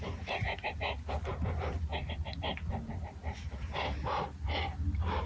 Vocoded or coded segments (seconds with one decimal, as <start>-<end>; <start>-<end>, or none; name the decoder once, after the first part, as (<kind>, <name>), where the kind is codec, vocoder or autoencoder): none